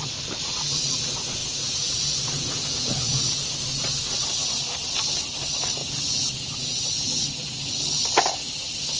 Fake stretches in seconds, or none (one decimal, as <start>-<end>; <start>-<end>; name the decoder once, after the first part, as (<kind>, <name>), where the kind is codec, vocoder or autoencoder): 1.4-3.5 (vocoder, Vocos); 5.8-7.2